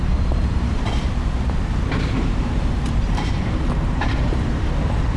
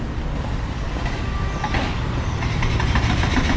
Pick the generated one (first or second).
first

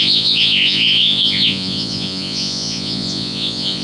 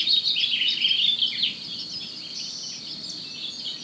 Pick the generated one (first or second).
first